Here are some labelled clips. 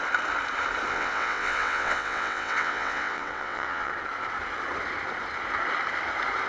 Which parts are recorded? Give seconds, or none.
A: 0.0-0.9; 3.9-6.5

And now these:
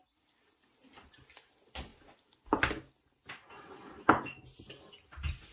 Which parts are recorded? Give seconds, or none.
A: 0.0-5.5

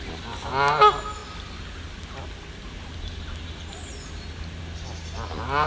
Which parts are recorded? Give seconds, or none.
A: 0.0-5.7